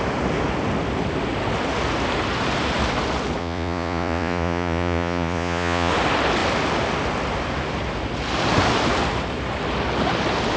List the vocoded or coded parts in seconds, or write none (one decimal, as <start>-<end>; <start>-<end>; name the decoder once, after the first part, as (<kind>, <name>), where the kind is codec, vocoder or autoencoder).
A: 3.4-5.9 (vocoder, Vocos)